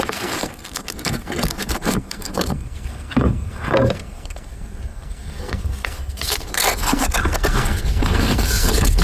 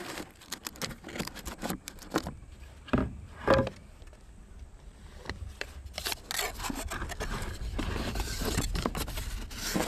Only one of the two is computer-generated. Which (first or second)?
first